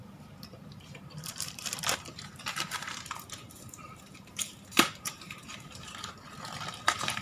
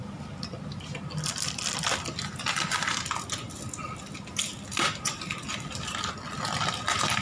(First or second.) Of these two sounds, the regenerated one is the first